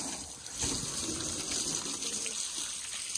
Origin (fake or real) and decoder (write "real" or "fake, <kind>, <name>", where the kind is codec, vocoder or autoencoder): real